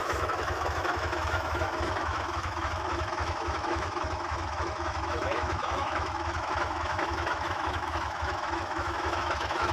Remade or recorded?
remade